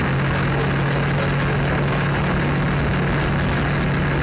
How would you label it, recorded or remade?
recorded